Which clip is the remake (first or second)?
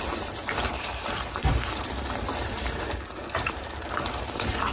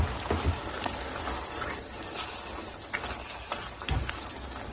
first